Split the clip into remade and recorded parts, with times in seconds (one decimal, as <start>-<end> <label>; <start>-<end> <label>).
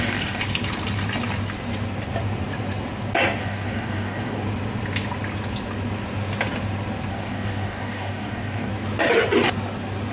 0.0-0.4 remade; 0.4-3.4 recorded; 3.4-4.4 remade; 4.4-7.1 recorded; 7.1-8.7 remade; 8.7-10.1 recorded